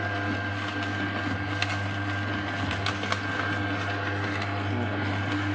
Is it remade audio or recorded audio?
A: recorded